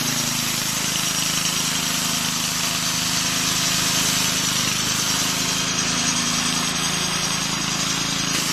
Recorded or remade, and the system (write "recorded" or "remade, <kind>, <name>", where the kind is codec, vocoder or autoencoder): recorded